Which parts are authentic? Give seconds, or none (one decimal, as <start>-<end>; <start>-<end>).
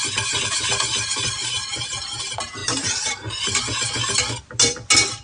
0.0-1.1; 2.0-2.6; 3.9-5.2